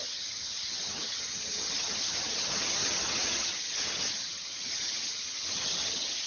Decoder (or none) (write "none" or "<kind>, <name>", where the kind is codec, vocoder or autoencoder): vocoder, HiFi-GAN